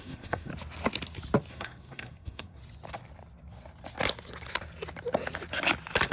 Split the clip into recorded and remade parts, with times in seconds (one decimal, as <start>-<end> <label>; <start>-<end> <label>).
0.0-0.5 remade; 0.5-1.5 recorded; 1.5-2.6 remade; 2.6-6.1 recorded